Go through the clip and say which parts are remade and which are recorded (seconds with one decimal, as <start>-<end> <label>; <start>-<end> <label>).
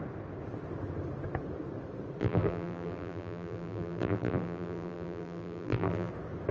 0.0-2.2 recorded; 2.2-6.1 remade; 6.1-6.5 recorded